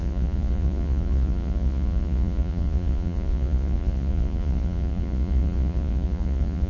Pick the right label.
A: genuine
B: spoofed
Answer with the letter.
B